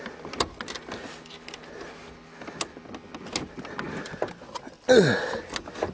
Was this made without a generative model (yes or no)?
yes